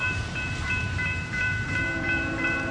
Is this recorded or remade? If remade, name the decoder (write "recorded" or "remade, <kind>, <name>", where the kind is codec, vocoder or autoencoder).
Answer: remade, vocoder, BigVGAN v2